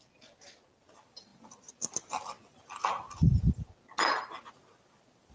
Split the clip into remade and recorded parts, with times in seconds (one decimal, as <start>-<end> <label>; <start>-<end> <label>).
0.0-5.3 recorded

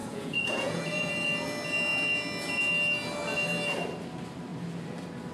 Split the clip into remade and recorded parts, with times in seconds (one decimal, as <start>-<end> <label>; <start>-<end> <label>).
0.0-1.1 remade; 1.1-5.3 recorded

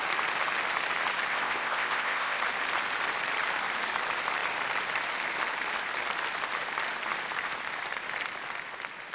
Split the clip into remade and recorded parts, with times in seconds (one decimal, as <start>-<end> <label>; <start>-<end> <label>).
0.0-1.3 recorded; 1.3-2.4 remade; 2.4-9.1 recorded